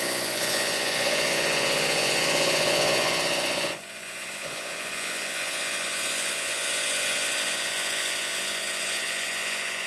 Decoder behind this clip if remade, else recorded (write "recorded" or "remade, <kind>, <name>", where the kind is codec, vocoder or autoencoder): remade, vocoder, Vocos